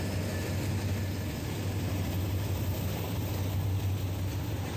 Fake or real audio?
real